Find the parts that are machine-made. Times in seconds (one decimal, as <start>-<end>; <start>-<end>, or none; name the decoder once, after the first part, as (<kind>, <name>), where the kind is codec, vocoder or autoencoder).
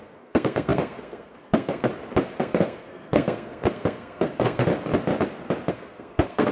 0.0-1.9 (codec, SNAC); 2.4-4.7; 5.7-6.5